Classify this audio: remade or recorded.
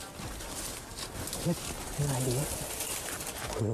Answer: recorded